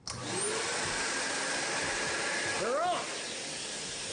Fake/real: real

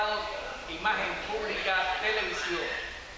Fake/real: real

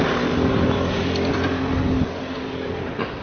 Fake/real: real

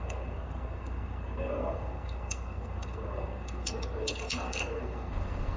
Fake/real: fake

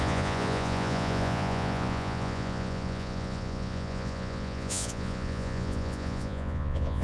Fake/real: fake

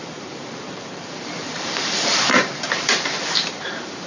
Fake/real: fake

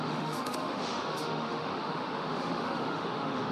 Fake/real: fake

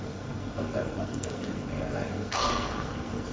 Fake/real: fake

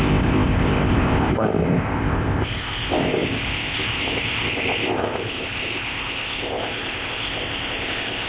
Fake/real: fake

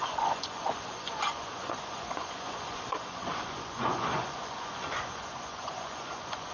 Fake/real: fake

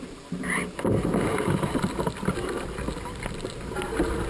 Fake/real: real